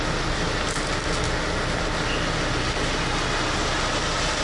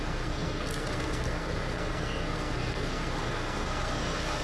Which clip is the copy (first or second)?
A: second